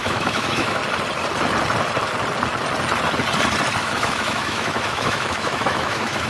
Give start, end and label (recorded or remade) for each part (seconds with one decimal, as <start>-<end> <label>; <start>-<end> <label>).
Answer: 0.0-0.8 remade; 0.8-3.8 recorded; 3.8-6.3 remade